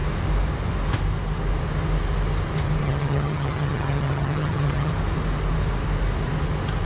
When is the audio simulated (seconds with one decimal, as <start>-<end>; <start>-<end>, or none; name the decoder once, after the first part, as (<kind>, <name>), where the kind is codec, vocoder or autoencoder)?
2.8-4.9 (vocoder, HiFi-GAN)

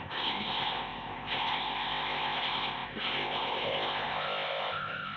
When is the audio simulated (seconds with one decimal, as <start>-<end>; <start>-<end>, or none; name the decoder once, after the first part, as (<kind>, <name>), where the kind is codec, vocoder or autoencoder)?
0.0-5.2 (codec, ZipCodec)

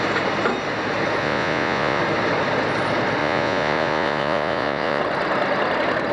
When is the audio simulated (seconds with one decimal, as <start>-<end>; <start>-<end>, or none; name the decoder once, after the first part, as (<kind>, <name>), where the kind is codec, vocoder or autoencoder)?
1.2-2.0 (vocoder, Vocos); 3.2-5.0

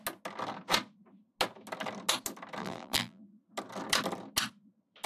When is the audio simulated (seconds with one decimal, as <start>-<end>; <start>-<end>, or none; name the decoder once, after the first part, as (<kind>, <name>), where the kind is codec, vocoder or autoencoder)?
2.6-3.2 (vocoder, BigVGAN v2)

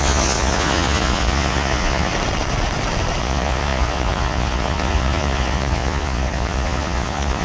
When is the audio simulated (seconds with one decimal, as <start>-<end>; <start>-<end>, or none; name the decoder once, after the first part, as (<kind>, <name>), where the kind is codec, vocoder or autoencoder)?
0.0-2.1 (vocoder, Vocos); 3.2-7.4

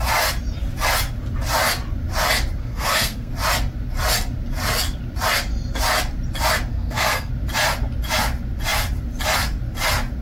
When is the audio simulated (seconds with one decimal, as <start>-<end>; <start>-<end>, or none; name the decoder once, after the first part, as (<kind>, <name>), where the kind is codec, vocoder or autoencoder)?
2.6-3.3 (codec, SNAC); 6.7-7.3